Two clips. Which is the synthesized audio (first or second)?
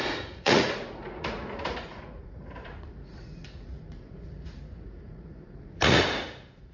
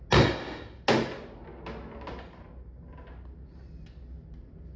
first